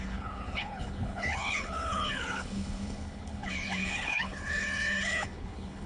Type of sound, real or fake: fake